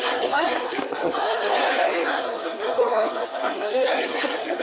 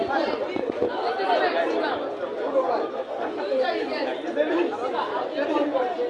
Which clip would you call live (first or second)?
second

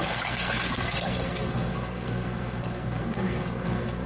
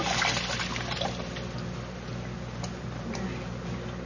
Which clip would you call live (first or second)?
second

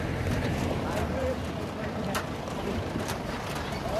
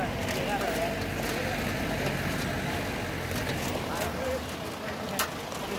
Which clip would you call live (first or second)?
second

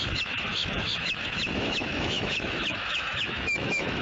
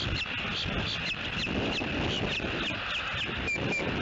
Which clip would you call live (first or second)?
second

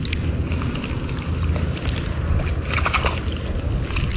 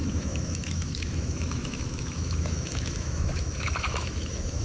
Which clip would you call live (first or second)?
first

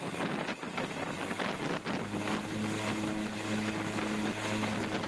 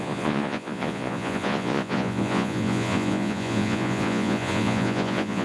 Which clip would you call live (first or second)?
first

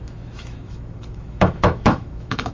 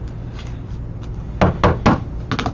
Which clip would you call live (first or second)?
second